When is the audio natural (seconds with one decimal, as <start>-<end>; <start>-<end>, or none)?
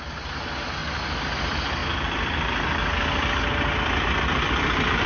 0.0-5.1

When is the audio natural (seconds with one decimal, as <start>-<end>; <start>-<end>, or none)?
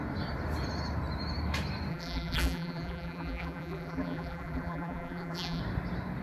0.0-1.9; 5.6-6.2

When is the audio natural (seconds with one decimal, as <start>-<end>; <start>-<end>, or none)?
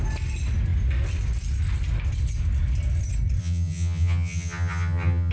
0.0-3.4